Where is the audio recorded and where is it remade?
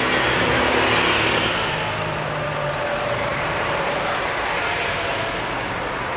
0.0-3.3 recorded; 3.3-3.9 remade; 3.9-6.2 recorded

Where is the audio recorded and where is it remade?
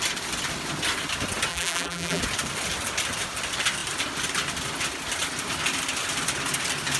0.0-1.5 recorded; 1.5-2.2 remade; 2.2-7.0 recorded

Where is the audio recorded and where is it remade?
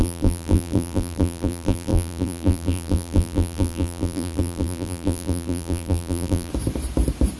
0.0-6.5 remade; 6.5-7.4 recorded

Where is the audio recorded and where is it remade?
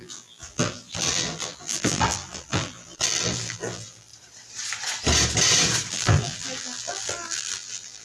0.0-4.1 remade; 4.1-5.9 recorded; 5.9-8.0 remade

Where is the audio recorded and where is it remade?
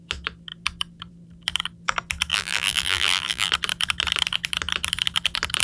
0.0-2.3 recorded; 2.3-3.5 remade; 3.5-5.6 recorded